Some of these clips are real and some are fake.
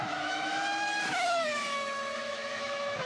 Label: fake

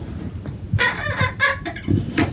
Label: fake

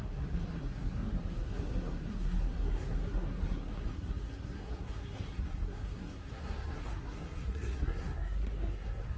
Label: fake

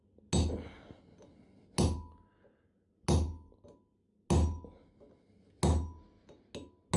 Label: real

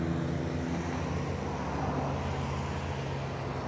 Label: real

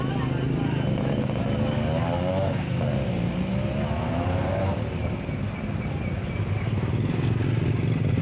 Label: real